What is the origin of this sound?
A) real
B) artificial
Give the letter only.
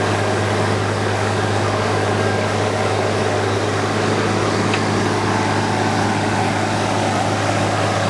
B